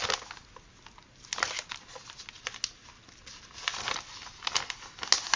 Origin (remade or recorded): recorded